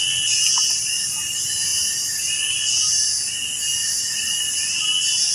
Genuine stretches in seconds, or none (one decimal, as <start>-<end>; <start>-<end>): 0.0-3.7; 4.4-5.3